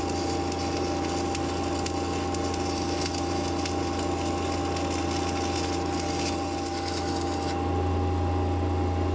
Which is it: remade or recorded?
recorded